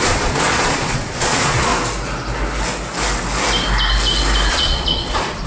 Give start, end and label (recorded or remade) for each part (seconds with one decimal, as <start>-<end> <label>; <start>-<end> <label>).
0.0-1.7 remade; 1.7-4.5 recorded; 4.5-5.5 remade